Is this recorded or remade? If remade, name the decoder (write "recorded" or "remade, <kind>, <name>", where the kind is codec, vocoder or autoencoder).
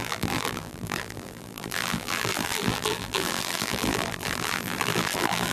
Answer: remade, vocoder, BigVGAN v2